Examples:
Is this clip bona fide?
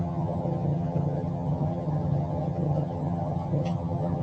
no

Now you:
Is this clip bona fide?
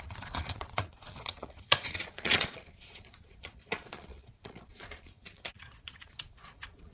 no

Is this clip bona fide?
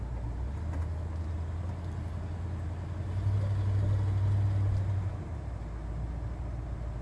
yes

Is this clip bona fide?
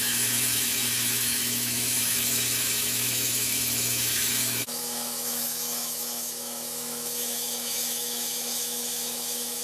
no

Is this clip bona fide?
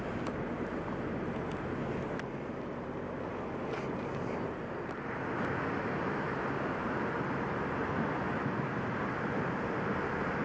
yes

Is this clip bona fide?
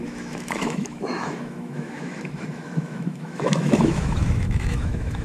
no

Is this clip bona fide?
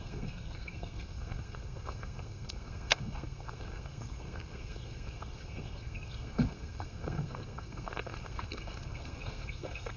no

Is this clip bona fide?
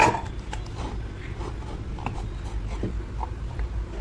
yes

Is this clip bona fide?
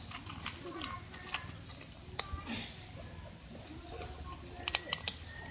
yes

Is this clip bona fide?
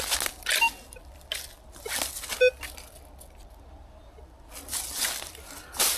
yes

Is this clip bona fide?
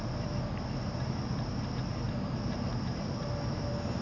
yes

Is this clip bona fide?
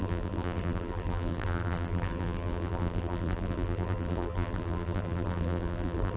no